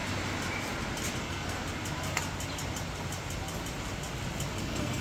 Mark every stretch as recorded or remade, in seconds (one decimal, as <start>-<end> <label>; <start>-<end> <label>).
0.0-1.2 recorded; 1.2-1.6 remade; 1.6-4.6 recorded; 4.6-5.0 remade